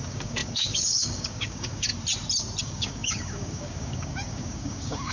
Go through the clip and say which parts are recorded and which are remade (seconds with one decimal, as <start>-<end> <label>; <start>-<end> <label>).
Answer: 0.0-1.9 remade; 1.9-2.6 recorded; 2.6-5.1 remade